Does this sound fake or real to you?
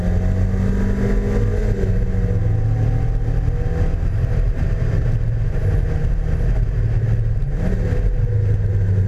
real